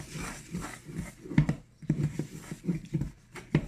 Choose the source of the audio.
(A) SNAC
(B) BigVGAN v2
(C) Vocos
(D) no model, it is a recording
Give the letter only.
B